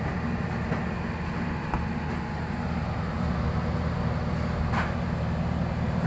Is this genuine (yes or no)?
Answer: yes